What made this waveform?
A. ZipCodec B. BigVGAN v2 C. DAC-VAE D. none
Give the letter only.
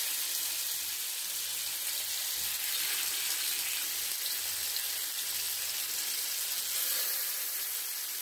D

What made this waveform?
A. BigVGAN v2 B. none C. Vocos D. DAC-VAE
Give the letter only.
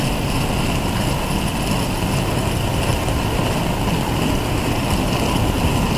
B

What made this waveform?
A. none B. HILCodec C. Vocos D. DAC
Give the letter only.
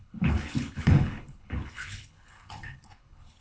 B